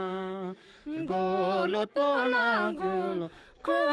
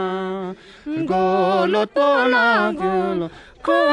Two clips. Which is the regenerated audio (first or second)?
first